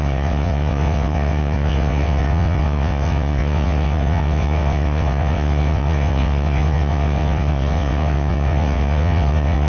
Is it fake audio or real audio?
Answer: fake